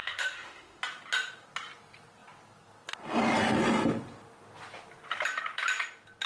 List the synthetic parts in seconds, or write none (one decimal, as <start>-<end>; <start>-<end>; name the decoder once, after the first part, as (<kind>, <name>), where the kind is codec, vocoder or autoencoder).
0.0-0.8 (autoencoder, DAC-VAE)